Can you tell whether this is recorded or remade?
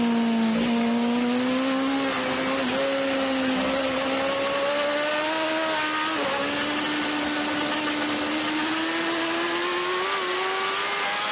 recorded